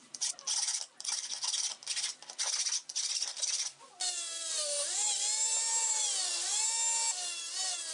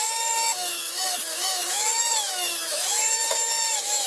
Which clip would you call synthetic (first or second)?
second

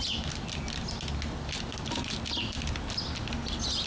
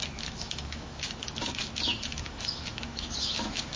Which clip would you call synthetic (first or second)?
second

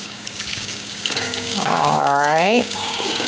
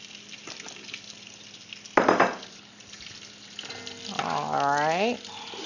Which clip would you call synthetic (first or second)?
first